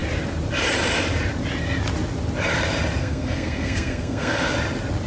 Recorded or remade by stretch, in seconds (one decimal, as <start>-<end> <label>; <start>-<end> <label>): 0.0-3.0 recorded; 3.0-4.5 remade; 4.5-5.1 recorded